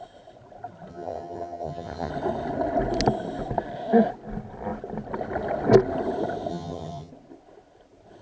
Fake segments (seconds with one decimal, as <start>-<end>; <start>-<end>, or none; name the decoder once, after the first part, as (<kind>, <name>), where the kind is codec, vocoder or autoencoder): 0.9-2.1 (vocoder, HiFi-GAN); 6.5-7.1